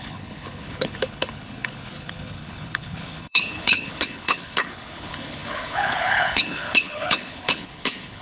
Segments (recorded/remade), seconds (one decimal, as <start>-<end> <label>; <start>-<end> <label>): 0.0-8.2 remade